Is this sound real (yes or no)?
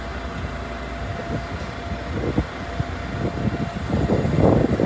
yes